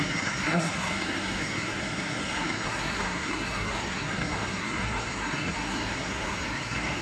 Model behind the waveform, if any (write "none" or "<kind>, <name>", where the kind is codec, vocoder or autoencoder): codec, SNAC